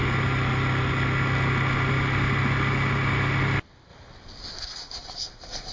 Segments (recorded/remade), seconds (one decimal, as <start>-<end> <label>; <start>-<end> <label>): 0.0-5.7 recorded